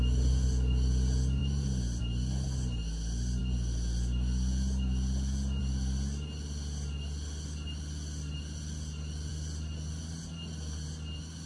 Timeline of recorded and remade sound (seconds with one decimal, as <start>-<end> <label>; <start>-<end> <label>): 0.0-11.5 recorded